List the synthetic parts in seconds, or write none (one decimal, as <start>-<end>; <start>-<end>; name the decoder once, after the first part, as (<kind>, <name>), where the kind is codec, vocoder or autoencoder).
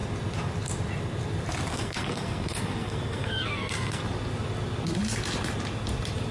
1.7-4.0 (codec, SNAC)